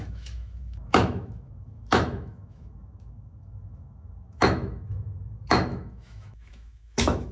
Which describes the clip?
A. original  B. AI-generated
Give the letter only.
B